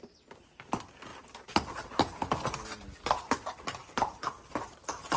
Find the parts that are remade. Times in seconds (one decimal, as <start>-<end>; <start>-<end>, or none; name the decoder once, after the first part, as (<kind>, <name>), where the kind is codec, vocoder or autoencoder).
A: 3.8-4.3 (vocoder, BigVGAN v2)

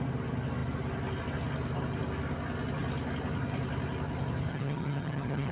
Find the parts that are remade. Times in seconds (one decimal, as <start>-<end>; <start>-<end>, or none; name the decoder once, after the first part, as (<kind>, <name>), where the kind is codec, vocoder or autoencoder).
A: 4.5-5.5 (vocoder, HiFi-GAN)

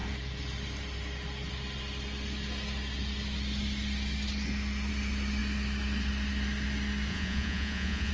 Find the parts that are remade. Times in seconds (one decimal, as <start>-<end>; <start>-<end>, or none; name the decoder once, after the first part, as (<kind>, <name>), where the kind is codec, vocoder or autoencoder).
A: 7.1-8.1 (vocoder, Vocos)